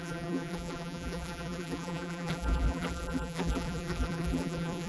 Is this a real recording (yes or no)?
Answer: no